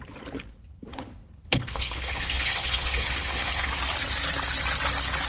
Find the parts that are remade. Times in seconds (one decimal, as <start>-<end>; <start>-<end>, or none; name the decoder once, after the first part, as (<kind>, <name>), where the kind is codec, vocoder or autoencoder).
0.5-3.7 (codec, HILCodec)